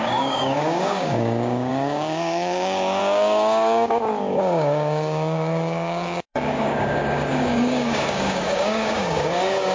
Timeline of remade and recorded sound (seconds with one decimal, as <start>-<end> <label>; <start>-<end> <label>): 0.0-9.7 remade

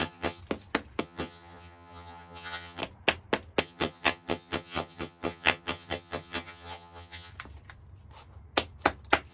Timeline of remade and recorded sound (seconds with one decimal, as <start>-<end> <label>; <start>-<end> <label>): 0.0-0.4 remade; 0.4-1.0 recorded; 1.0-2.8 remade; 2.8-3.6 recorded; 3.6-7.3 remade; 7.3-9.3 recorded

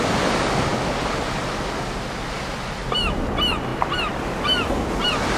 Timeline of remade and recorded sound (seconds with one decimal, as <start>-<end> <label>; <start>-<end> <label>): 0.0-5.4 recorded

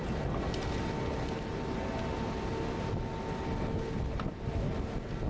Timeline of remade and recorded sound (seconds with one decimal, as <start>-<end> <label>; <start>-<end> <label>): 0.0-5.3 recorded

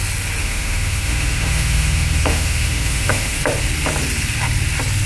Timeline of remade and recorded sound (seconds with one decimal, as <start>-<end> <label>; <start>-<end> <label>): 0.0-0.4 recorded; 0.4-3.4 remade; 3.4-5.1 recorded

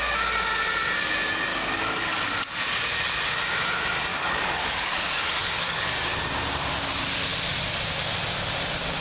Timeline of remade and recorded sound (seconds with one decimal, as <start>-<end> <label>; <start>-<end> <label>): 0.0-1.5 recorded; 1.5-2.2 remade; 2.2-4.1 recorded; 4.1-6.2 remade; 6.2-9.0 recorded

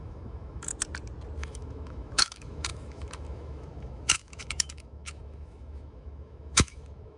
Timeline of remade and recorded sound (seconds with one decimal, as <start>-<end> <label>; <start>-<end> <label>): 0.0-0.7 remade; 0.7-1.4 recorded; 1.4-7.2 remade